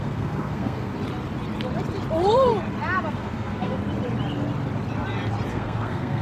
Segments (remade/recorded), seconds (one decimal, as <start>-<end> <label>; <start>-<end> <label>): 0.0-0.9 remade; 0.9-3.1 recorded; 3.1-3.8 remade; 3.8-5.5 recorded; 5.5-6.2 remade

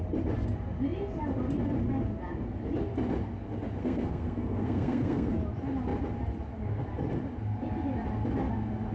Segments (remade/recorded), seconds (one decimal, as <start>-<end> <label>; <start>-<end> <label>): 0.0-3.8 recorded; 3.8-5.3 remade; 5.3-8.9 recorded

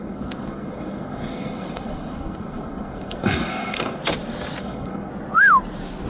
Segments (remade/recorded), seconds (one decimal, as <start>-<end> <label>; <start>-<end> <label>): 0.0-4.0 remade; 4.0-4.6 recorded; 4.6-5.1 remade; 5.1-6.1 recorded

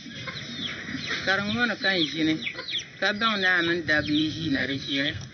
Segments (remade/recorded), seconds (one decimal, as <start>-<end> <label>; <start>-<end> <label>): 0.0-4.2 recorded; 4.2-5.3 remade

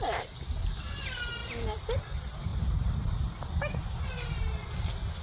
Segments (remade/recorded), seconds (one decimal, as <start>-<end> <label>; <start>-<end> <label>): 0.0-5.2 recorded

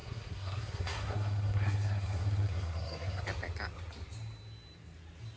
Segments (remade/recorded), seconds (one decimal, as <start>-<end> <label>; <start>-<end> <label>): 0.0-3.2 remade; 3.2-5.4 recorded